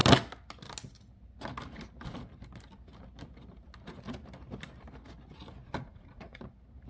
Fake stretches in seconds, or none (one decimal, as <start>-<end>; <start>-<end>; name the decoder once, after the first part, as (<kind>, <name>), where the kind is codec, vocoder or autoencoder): 5.6-6.4 (vocoder, Vocos)